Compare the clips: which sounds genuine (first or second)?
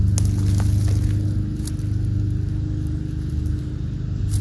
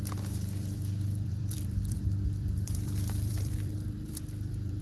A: first